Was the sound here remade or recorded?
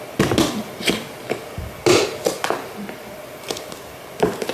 recorded